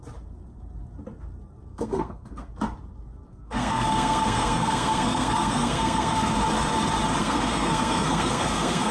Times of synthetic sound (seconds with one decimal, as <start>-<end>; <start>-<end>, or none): 1.7-2.5; 3.3-6.3; 7.2-8.9